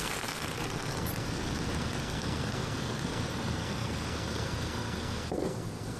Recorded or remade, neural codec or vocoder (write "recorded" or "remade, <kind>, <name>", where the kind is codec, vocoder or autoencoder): remade, codec, SNAC